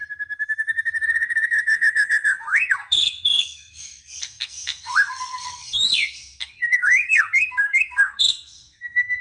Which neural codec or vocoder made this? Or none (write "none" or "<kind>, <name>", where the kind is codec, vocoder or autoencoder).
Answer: codec, SNAC